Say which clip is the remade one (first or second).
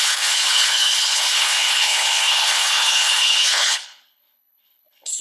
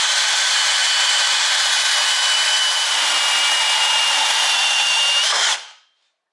first